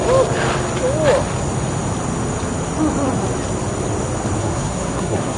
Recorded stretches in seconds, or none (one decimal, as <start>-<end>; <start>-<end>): 0.0-4.4